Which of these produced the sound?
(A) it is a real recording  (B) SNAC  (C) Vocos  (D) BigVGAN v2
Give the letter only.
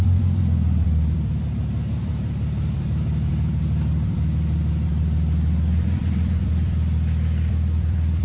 D